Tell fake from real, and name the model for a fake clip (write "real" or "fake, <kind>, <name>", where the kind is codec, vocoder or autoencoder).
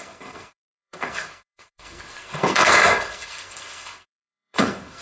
fake, codec, SNAC